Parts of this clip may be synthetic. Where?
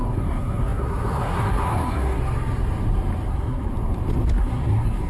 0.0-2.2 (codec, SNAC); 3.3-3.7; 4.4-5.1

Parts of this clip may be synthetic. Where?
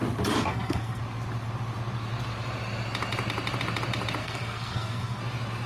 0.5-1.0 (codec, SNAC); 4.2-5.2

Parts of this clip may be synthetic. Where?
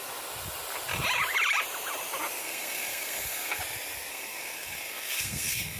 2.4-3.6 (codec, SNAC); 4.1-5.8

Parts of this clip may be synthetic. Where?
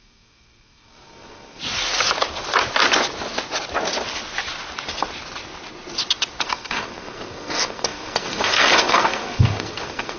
0.0-1.6 (codec, SNAC); 6.4-10.2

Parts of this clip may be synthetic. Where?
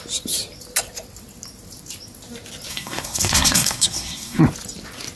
2.7-4.4 (codec, SNAC)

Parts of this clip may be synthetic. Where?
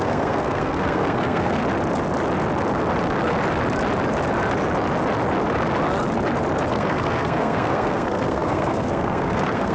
0.0-1.6 (codec, SNAC); 6.7-9.7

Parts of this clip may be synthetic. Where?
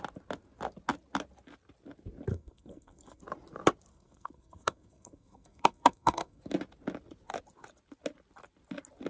2.3-3.2 (codec, SNAC); 3.9-6.4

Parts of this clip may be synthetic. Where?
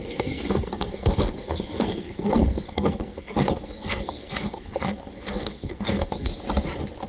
0.0-6.3 (codec, SNAC)